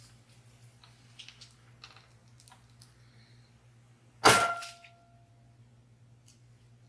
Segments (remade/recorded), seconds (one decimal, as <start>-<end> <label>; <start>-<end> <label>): 0.0-6.9 recorded